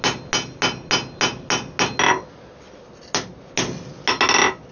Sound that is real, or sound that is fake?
real